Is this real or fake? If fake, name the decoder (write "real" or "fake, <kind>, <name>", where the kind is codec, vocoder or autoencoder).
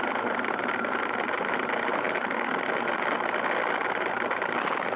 real